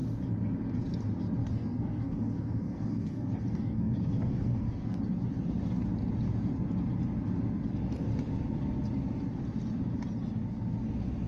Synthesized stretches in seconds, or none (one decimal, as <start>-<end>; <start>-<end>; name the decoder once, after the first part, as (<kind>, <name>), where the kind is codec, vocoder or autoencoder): 1.4-5.0 (codec, SNAC)